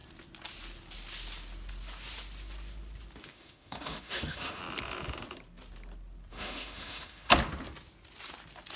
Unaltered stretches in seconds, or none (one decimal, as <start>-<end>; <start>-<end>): 0.0-3.3; 4.6-6.3; 7.3-8.8